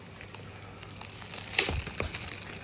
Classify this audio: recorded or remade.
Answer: recorded